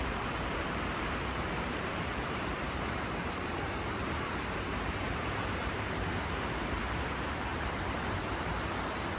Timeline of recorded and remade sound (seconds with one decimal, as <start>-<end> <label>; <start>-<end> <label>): 0.0-9.2 remade